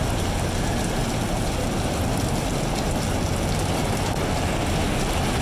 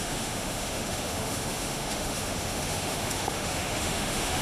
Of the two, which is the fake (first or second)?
second